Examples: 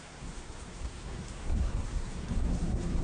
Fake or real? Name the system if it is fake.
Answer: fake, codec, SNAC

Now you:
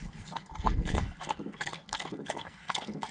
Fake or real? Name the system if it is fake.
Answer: fake, codec, SNAC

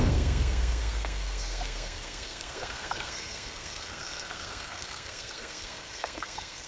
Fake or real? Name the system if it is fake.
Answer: fake, codec, SNAC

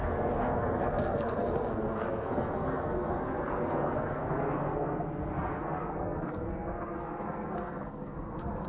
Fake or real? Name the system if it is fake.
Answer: fake, codec, SNAC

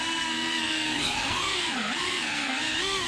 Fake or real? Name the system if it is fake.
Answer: fake, codec, SNAC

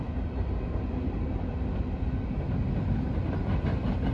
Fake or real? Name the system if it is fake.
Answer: real